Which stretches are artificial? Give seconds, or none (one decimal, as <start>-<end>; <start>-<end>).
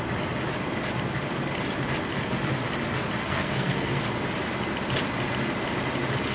3.2-4.0